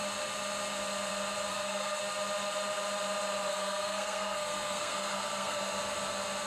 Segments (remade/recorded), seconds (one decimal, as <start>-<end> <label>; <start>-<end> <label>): 0.0-1.5 recorded; 1.5-2.0 remade; 2.0-3.5 recorded; 3.5-5.8 remade; 5.8-6.5 recorded